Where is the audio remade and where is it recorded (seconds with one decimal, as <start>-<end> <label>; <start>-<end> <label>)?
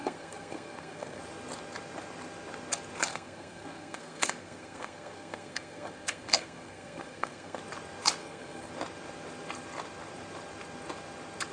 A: 0.0-1.2 remade; 1.2-3.1 recorded; 3.1-7.6 remade; 7.6-8.2 recorded; 8.2-8.7 remade; 8.7-11.5 recorded